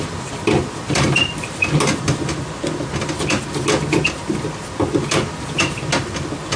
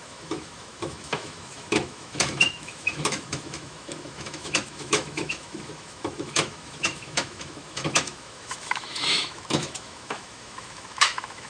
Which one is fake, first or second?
second